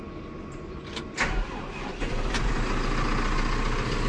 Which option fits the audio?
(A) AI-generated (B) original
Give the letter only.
B